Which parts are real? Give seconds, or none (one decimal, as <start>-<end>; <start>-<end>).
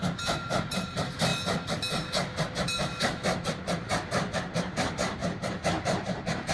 1.3-2.4